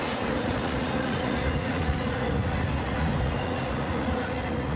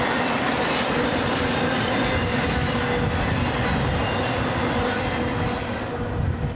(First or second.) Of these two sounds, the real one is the second